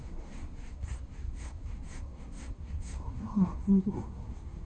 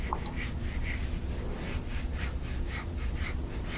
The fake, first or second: first